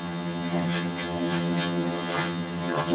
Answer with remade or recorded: remade